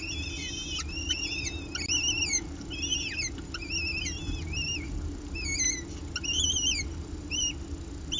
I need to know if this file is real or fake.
real